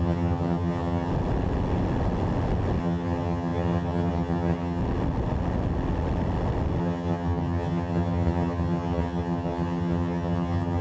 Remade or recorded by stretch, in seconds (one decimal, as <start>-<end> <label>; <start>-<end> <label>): 0.0-1.1 remade; 1.1-2.8 recorded; 2.8-4.8 remade; 4.8-6.8 recorded; 6.8-10.8 remade